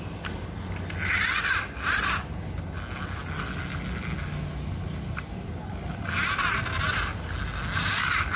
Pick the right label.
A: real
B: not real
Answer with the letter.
A